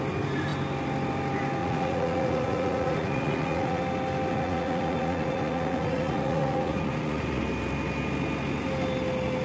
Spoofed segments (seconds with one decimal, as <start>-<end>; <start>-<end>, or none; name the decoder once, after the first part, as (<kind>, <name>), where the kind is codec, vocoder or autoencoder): 1.6-3.8 (vocoder, Vocos); 4.3-7.4